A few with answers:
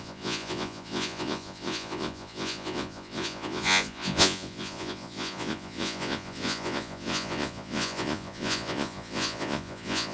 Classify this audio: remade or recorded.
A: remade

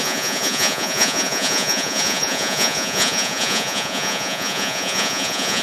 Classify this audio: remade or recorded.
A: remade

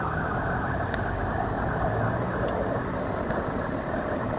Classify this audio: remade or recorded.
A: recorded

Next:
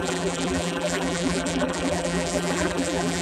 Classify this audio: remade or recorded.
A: remade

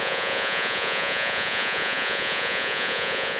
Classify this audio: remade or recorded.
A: remade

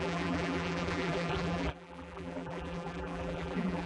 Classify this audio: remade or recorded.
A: remade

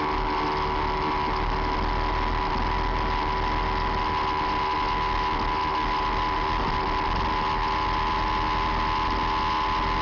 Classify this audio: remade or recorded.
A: recorded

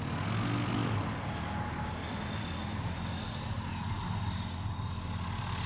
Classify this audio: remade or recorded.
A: recorded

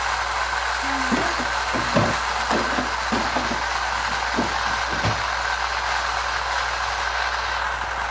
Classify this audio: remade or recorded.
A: recorded